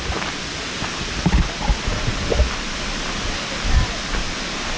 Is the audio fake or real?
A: real